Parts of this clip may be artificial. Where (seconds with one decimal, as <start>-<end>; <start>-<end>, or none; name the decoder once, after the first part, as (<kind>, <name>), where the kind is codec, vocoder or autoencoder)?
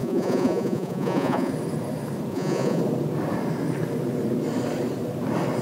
0.0-1.5 (vocoder, Vocos); 2.3-2.8